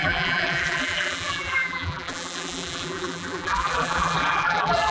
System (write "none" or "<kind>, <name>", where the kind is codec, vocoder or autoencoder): vocoder, BigVGAN v2